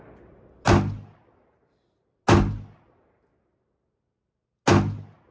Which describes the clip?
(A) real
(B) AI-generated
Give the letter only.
A